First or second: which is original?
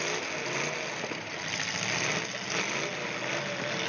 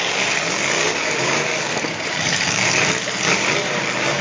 first